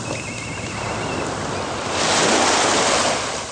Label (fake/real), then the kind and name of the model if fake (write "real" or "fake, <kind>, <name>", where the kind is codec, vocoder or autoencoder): real